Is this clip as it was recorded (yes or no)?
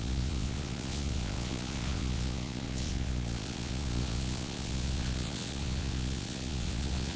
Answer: no